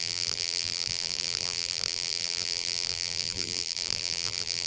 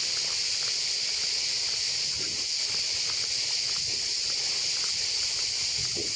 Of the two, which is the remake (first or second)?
first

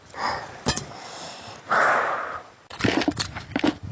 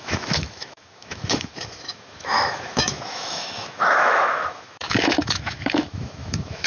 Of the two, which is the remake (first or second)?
second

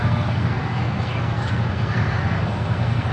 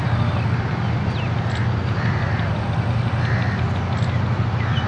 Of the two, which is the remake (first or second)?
first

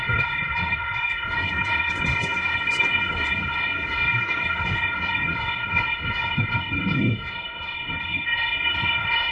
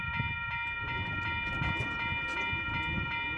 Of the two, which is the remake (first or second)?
first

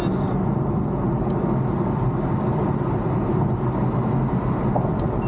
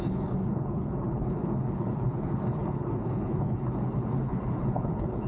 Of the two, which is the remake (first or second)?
second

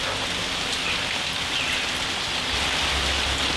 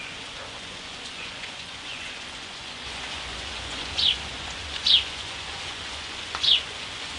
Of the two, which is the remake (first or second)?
second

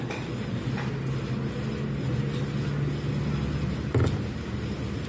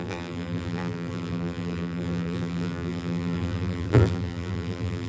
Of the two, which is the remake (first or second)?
second